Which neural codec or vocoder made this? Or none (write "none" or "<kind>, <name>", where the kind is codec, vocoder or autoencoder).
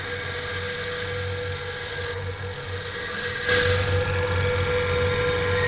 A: none